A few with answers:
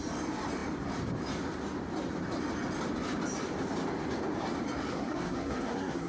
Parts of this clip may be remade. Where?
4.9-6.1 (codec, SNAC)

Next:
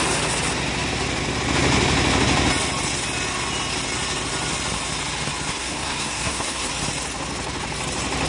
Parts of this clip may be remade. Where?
5.5-6.7 (codec, SNAC)

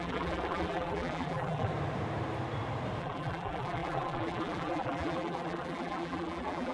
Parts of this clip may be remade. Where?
0.0-1.7 (vocoder, BigVGAN v2); 3.0-6.7